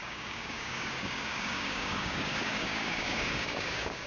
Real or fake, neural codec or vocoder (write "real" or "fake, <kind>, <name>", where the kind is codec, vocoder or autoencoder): fake, codec, DAC